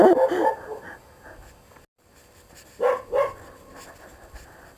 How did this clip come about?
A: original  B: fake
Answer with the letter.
A